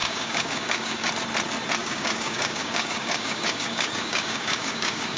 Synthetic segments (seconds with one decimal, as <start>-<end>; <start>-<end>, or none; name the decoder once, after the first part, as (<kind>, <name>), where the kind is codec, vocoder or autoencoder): 0.0-1.1 (codec, DAC); 1.8-5.2